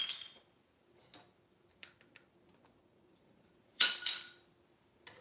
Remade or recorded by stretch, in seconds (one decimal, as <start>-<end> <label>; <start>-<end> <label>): 0.0-2.8 recorded; 2.8-3.9 remade; 3.9-5.2 recorded